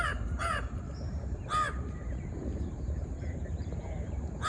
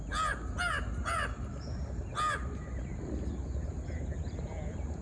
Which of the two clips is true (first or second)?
second